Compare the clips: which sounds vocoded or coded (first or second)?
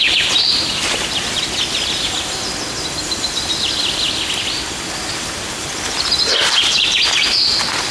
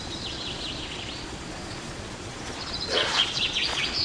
second